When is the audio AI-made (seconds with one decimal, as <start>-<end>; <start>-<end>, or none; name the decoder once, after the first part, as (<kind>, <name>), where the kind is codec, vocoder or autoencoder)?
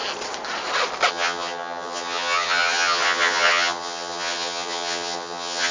1.1-5.7 (vocoder, HiFi-GAN)